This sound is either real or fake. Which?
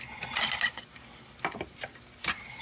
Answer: real